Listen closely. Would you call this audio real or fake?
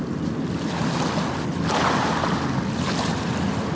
real